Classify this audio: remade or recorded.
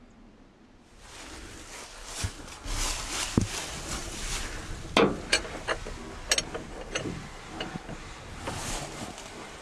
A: recorded